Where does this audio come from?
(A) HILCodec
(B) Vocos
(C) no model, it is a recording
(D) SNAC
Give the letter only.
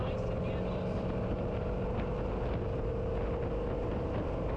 C